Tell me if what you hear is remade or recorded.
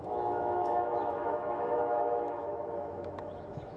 remade